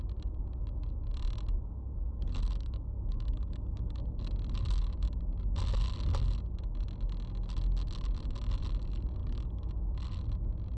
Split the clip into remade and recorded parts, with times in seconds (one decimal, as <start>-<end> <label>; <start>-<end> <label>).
0.0-2.1 recorded; 2.1-4.3 remade; 4.3-9.2 recorded; 9.2-9.7 remade; 9.7-10.8 recorded